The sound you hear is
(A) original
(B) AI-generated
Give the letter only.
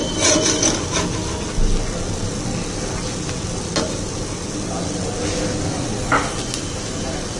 A